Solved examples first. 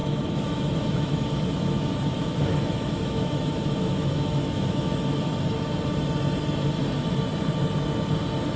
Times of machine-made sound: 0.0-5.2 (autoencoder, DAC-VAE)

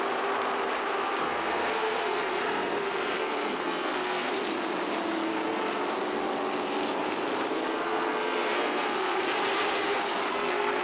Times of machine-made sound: 1.2-4.3 (codec, SNAC); 7.5-9.2; 10.3-10.8

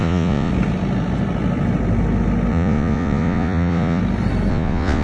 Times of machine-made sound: 0.0-0.5 (vocoder, Vocos); 2.5-4.0; 4.5-5.0

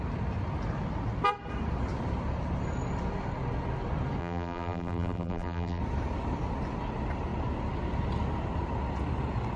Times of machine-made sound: 4.2-5.8 (vocoder, BigVGAN v2)

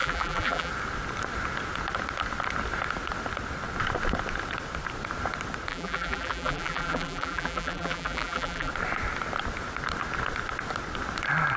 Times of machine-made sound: 0.0-0.7 (vocoder, BigVGAN v2); 5.7-8.7

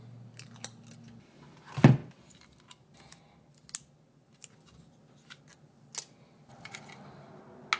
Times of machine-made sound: none

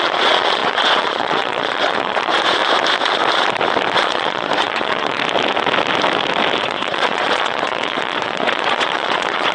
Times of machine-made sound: 0.0-2.6 (vocoder, Vocos); 3.9-5.2; 6.6-9.5